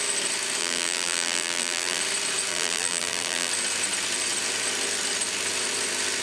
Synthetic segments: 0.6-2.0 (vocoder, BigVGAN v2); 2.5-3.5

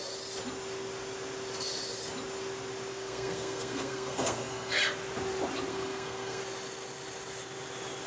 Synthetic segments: 2.9-4.8 (codec, SNAC); 5.7-6.4

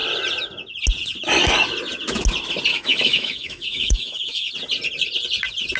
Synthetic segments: 2.7-4.5 (autoencoder, DAC-VAE)

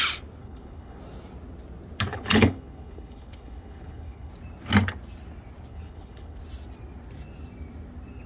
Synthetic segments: 0.4-1.0 (codec, HILCodec); 2.1-4.3; 5.7-6.4

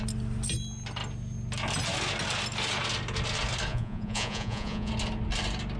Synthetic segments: 3.7-4.9 (vocoder, Vocos)

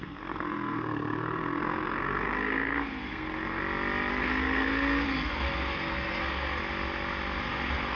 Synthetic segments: 0.0-3.6 (codec, SNAC); 4.1-6.6; 7.4-8.0

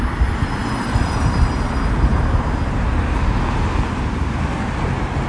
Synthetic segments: none